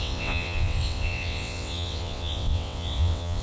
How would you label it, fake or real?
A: fake